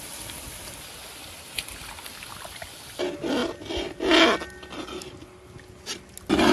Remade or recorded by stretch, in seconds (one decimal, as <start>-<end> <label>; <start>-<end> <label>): 0.0-1.2 recorded; 1.2-2.0 remade; 2.0-6.5 recorded